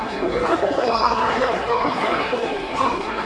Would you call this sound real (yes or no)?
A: no